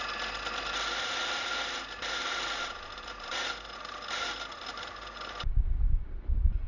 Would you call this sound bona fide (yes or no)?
yes